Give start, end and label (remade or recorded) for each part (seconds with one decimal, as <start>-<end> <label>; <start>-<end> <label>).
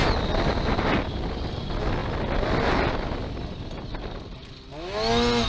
0.0-5.5 recorded